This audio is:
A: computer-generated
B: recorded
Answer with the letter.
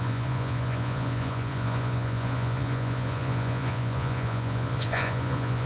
A